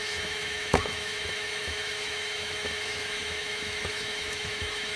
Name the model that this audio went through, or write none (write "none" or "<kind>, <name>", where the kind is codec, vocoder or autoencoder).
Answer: autoencoder, DAC-VAE